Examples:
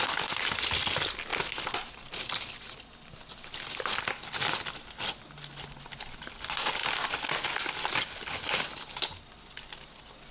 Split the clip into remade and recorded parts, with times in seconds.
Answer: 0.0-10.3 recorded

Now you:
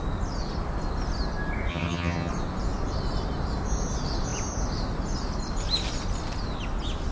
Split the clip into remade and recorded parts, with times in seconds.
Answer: 0.0-1.7 recorded; 1.7-2.3 remade; 2.3-7.1 recorded

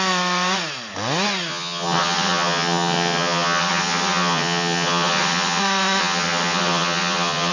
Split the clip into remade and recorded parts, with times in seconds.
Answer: 0.0-1.5 recorded; 1.5-5.6 remade; 5.6-6.0 recorded; 6.0-7.5 remade

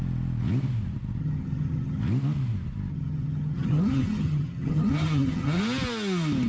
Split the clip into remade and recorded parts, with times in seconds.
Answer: 0.0-1.2 recorded; 1.2-2.0 remade; 2.0-2.9 recorded; 2.9-5.6 remade; 5.6-6.5 recorded

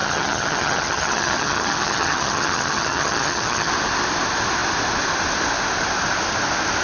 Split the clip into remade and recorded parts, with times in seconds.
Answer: 0.0-3.7 remade; 3.7-6.8 recorded